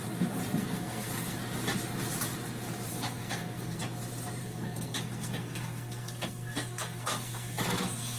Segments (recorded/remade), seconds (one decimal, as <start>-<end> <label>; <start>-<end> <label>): 0.0-0.6 recorded; 0.6-1.4 remade; 1.4-2.9 recorded; 2.9-3.8 remade; 3.8-4.4 recorded; 4.4-8.2 remade